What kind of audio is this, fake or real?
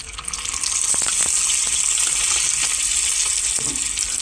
real